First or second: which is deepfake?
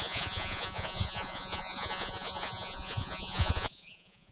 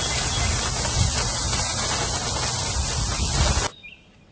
first